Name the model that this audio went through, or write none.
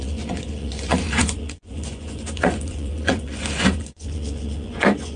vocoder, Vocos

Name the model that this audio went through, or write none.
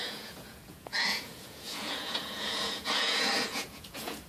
vocoder, Vocos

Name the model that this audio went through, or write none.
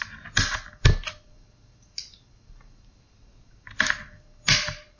none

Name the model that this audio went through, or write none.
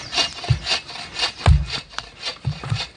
none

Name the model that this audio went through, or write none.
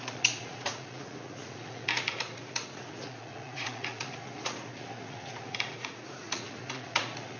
vocoder, Vocos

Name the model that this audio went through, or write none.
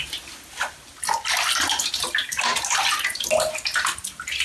none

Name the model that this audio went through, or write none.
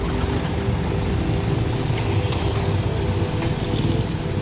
none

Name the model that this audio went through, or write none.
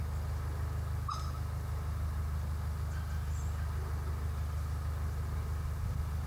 none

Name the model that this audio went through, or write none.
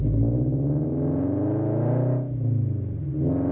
none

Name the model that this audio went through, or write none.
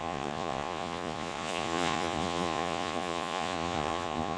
vocoder, Vocos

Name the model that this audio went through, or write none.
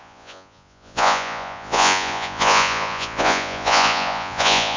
vocoder, Vocos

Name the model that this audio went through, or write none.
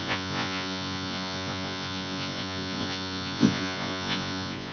vocoder, Vocos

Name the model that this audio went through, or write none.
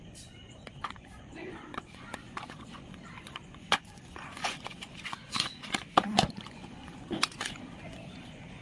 vocoder, Vocos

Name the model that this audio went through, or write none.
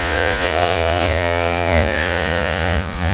vocoder, Vocos